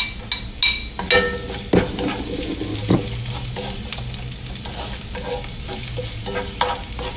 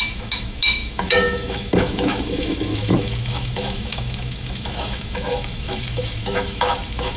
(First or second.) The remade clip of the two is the second